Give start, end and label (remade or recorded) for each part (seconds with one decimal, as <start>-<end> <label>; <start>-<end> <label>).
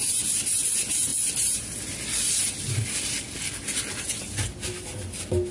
0.0-5.5 recorded